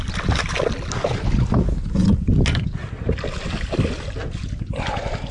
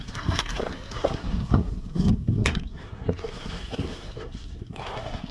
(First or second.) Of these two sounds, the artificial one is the second